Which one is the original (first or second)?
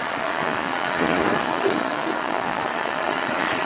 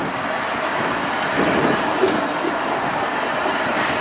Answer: second